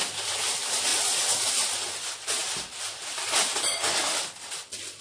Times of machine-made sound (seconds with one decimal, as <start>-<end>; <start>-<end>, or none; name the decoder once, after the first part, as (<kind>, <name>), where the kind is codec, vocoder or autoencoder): none